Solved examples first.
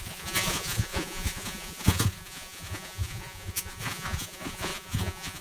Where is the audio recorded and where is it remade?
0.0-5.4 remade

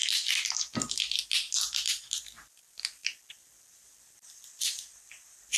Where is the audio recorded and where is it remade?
0.0-3.0 remade; 3.0-3.7 recorded; 3.7-5.6 remade

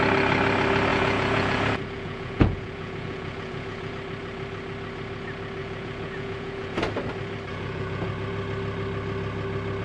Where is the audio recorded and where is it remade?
0.0-0.9 recorded; 0.9-3.9 remade; 3.9-5.6 recorded; 5.6-6.8 remade; 6.8-7.5 recorded; 7.5-8.1 remade; 8.1-9.8 recorded

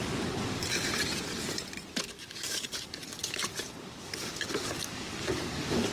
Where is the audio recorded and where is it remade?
0.0-0.6 remade; 0.6-2.0 recorded; 2.0-5.9 remade

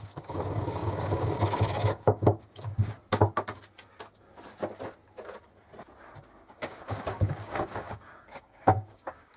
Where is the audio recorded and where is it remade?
0.0-3.0 remade; 3.0-6.5 recorded; 6.5-9.4 remade

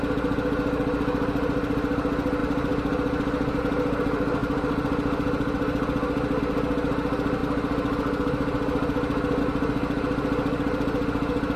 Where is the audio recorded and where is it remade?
0.0-11.6 recorded

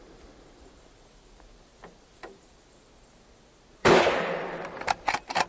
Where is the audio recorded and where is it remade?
0.0-3.8 recorded; 3.8-5.1 remade; 5.1-5.5 recorded

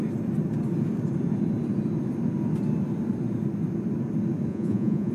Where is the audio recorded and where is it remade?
0.0-4.5 recorded; 4.5-5.1 remade